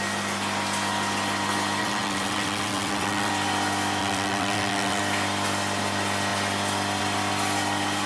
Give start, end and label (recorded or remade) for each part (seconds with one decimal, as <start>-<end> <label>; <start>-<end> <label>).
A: 0.0-1.8 recorded; 1.8-3.3 remade; 3.3-4.0 recorded; 4.0-5.0 remade; 5.0-8.1 recorded